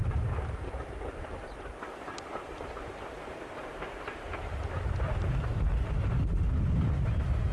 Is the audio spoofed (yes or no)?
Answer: yes